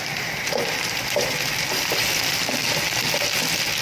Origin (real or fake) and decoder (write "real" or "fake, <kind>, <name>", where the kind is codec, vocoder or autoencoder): real